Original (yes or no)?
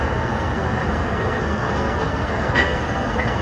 no